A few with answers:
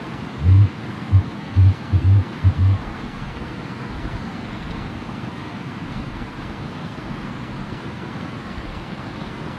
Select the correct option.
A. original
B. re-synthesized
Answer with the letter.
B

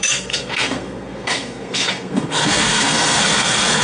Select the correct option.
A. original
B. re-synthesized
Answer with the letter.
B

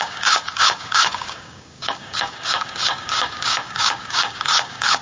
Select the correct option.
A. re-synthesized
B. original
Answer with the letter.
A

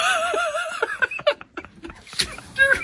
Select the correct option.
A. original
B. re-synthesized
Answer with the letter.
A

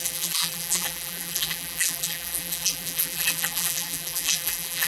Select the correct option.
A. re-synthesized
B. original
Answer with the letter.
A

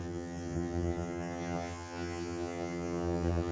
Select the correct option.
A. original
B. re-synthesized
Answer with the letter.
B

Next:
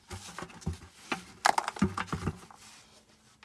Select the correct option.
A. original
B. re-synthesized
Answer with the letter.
A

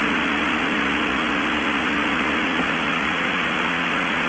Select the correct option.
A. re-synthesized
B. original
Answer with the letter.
A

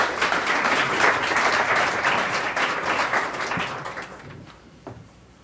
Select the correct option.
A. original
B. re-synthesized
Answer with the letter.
B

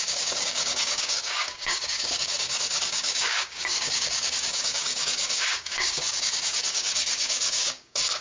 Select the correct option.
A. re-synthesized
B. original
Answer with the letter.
A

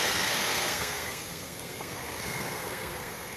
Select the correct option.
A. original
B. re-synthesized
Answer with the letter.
B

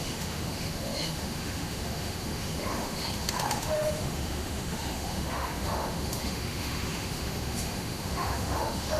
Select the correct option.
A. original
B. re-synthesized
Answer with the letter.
B